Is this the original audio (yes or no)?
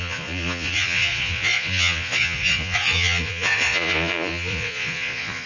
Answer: no